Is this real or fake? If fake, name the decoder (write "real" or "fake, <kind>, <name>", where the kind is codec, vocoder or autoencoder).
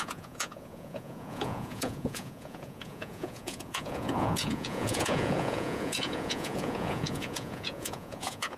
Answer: fake, vocoder, Vocos